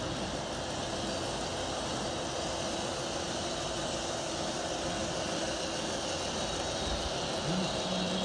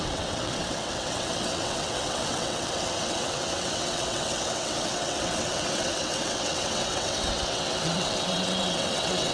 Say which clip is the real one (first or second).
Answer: first